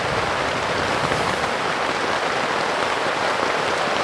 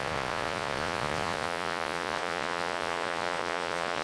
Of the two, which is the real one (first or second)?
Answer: first